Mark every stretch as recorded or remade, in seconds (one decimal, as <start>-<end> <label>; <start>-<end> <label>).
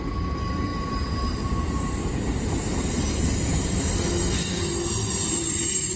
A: 0.0-6.0 recorded